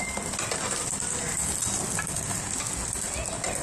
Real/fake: real